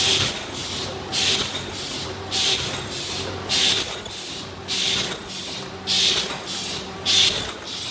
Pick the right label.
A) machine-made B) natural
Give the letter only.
B